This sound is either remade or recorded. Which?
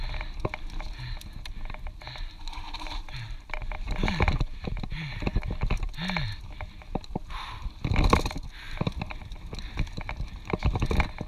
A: recorded